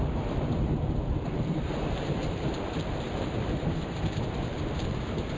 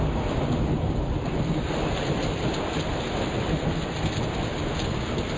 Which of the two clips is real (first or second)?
second